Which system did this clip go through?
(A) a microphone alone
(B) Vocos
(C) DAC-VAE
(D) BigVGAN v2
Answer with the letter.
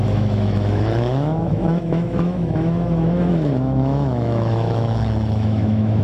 C